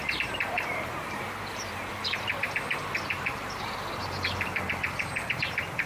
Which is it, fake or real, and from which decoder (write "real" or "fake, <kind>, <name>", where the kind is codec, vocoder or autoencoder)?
fake, vocoder, BigVGAN v2